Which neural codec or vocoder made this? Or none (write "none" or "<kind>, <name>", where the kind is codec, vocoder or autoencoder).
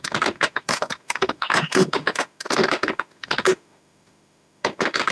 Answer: autoencoder, DAC-VAE